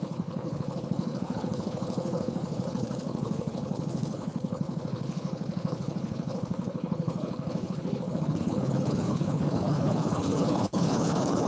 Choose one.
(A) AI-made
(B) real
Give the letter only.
A